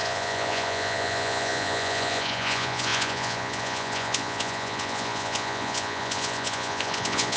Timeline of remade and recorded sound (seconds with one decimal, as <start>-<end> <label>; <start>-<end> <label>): 0.0-7.4 remade